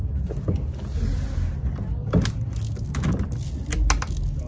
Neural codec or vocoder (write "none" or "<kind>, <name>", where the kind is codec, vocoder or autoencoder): none